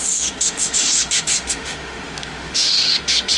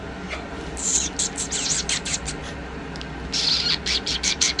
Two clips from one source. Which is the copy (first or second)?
first